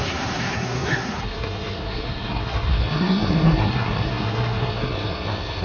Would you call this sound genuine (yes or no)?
no